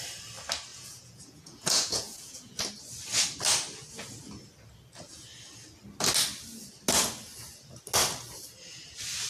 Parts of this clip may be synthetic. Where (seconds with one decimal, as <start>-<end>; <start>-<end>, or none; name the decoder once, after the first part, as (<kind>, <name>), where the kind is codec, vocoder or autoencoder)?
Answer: 0.7-2.6 (vocoder, Vocos)